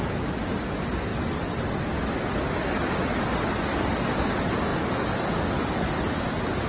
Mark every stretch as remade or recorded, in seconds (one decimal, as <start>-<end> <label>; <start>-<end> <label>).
0.0-6.7 recorded

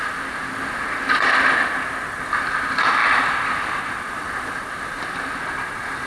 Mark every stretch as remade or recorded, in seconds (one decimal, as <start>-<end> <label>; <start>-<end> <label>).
0.0-6.1 recorded

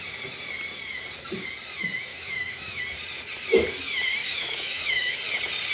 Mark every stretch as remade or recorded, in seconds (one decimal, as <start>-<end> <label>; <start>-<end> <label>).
0.0-2.1 recorded; 2.1-2.8 remade; 2.8-4.2 recorded; 4.2-5.2 remade; 5.2-5.7 recorded

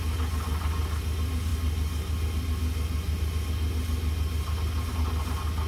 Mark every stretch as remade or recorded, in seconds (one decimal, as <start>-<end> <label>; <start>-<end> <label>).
0.0-5.7 recorded

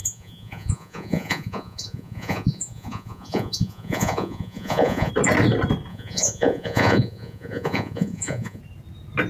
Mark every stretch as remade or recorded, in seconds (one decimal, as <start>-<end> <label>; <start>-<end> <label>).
0.0-5.1 remade; 5.1-5.9 recorded; 5.9-8.6 remade; 8.6-9.3 recorded

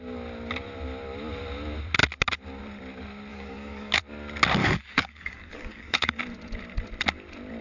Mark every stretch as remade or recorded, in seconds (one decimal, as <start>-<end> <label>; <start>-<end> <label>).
0.0-3.3 recorded; 3.3-4.0 remade; 4.0-4.6 recorded; 4.6-6.2 remade; 6.2-7.6 recorded

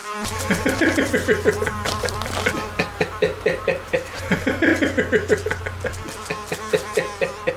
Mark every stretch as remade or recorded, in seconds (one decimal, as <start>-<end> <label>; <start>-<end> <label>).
0.0-4.7 remade; 4.7-5.6 recorded; 5.6-7.6 remade

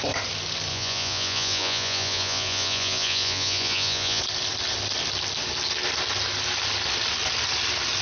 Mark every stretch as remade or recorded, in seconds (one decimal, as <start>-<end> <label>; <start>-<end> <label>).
0.0-0.7 recorded; 0.7-4.2 remade; 4.2-8.0 recorded